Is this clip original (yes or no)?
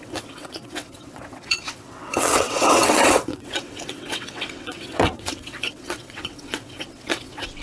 no